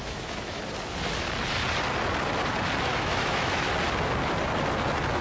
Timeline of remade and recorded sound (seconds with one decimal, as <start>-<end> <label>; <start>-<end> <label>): 0.0-0.6 remade; 0.6-2.9 recorded; 2.9-3.7 remade; 3.7-5.2 recorded